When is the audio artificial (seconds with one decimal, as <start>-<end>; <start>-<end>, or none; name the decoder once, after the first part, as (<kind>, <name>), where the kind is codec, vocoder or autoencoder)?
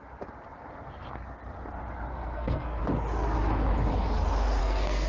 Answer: 2.1-2.8 (codec, SNAC); 4.6-5.1